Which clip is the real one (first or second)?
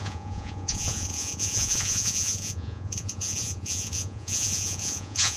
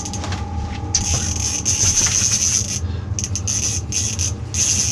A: second